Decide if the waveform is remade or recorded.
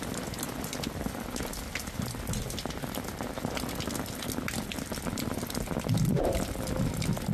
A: recorded